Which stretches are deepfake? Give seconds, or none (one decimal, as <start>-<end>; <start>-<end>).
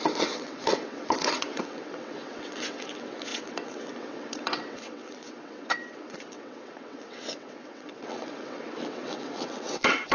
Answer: 0.0-10.1